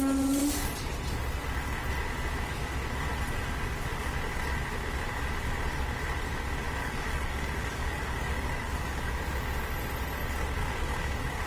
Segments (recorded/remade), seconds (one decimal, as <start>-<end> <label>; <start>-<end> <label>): 0.0-6.8 recorded; 6.8-9.1 remade; 9.1-10.6 recorded; 10.6-11.5 remade